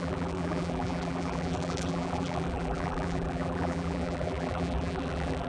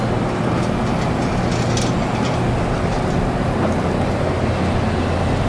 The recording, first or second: second